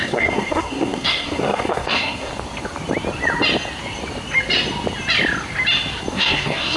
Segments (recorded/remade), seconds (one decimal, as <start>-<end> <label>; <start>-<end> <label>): 0.0-2.3 remade; 2.3-6.1 recorded; 6.1-6.8 remade